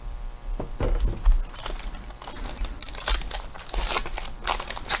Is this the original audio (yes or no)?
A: yes